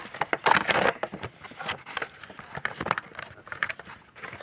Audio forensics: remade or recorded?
recorded